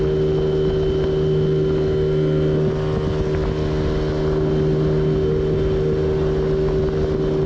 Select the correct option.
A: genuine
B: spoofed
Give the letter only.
A